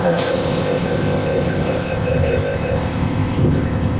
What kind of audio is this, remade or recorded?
remade